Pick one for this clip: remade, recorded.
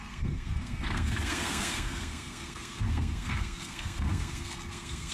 remade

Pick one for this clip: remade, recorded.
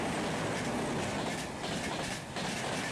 recorded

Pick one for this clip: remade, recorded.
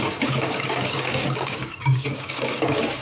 remade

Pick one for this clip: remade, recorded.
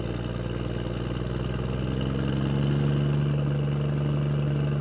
recorded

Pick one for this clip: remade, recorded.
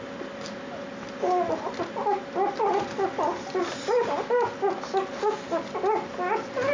recorded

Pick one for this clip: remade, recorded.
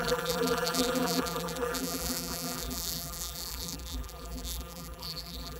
remade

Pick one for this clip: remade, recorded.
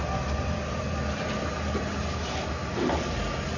recorded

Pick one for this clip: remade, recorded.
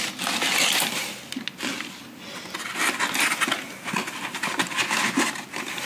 recorded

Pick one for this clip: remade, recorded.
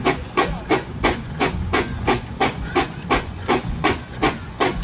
remade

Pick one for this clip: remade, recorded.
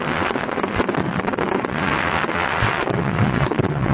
remade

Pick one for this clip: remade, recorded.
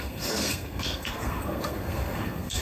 remade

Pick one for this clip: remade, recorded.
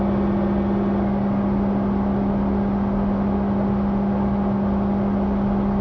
recorded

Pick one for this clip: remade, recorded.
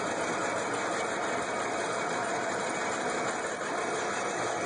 recorded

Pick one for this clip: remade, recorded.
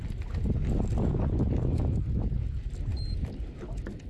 recorded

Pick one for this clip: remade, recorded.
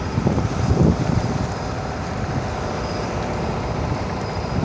remade